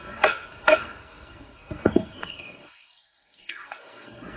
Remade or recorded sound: remade